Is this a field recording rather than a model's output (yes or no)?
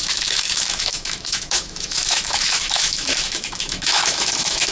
no